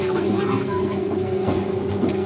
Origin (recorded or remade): remade